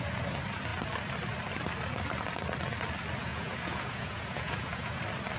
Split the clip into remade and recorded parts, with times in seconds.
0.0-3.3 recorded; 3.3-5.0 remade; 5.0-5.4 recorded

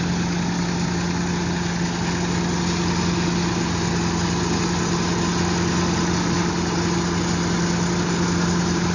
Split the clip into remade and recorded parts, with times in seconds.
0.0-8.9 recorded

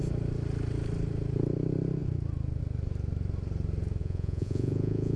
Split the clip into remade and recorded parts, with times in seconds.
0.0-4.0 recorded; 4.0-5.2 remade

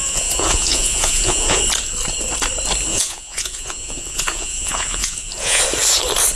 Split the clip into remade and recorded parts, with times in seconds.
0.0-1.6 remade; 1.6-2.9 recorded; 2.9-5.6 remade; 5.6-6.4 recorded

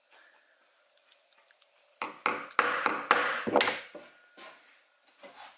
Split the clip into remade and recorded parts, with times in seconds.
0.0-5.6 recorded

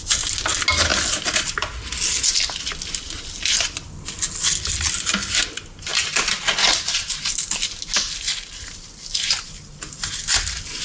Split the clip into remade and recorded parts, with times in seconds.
0.0-10.8 recorded

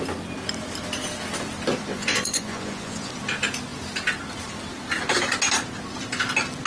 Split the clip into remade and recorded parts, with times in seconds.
0.0-1.9 recorded; 1.9-3.1 remade; 3.1-6.7 recorded

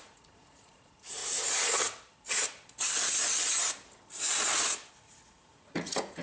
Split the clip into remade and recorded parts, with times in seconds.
0.0-1.2 remade; 1.2-4.9 recorded; 4.9-6.2 remade